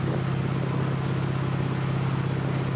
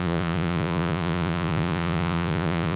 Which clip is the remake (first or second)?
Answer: second